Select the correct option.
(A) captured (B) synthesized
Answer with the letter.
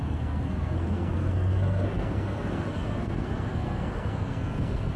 B